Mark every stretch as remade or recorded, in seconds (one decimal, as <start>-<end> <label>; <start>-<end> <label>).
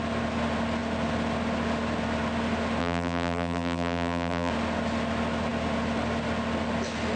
0.0-2.8 recorded; 2.8-4.5 remade; 4.5-7.2 recorded